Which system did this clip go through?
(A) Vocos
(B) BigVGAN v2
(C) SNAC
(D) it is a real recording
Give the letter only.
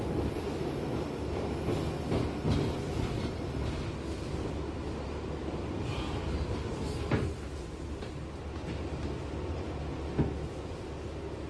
D